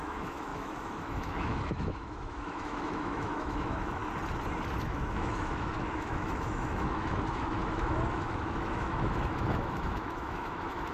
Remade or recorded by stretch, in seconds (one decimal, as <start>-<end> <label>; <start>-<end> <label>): 0.0-4.0 remade; 4.0-4.8 recorded; 4.8-10.9 remade